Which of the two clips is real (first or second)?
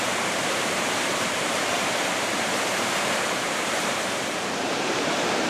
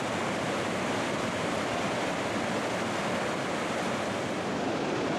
second